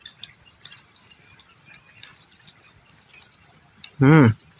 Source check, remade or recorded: recorded